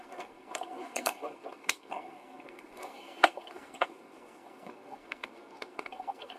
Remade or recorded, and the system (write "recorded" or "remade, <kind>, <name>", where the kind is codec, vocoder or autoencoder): remade, codec, SNAC